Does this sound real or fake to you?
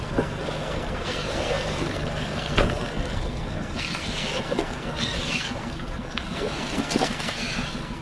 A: fake